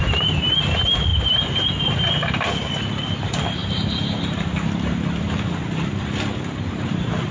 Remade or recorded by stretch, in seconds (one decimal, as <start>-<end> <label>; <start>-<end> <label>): 0.0-1.1 recorded; 1.1-1.7 remade; 1.7-3.6 recorded; 3.6-4.2 remade; 4.2-7.3 recorded